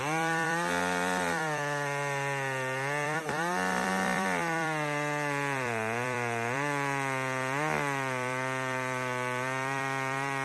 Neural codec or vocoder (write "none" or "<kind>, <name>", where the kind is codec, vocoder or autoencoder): vocoder, BigVGAN v2